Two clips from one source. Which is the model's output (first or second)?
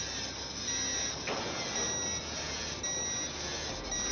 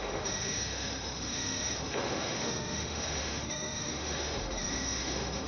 second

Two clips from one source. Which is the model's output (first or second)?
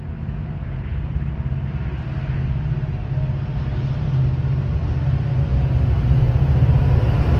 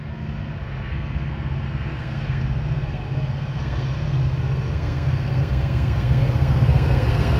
second